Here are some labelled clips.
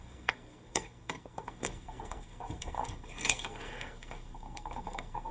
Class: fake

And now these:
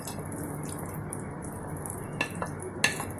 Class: real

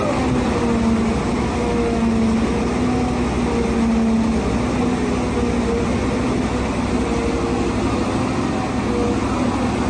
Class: real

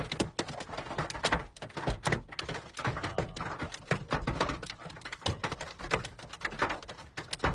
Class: real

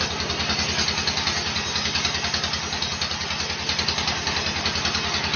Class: real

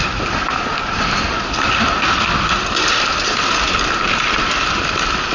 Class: real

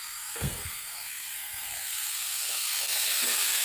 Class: fake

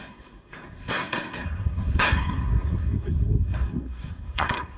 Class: fake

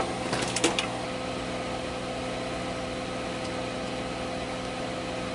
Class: real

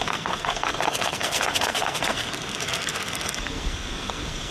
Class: fake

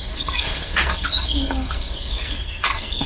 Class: fake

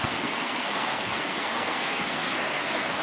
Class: fake